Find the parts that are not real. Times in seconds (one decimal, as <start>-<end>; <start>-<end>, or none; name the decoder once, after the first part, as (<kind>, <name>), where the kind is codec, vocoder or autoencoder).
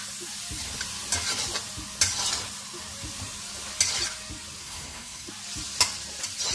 4.6-5.3 (codec, SNAC)